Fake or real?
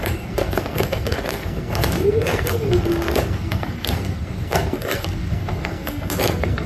fake